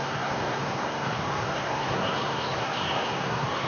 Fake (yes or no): yes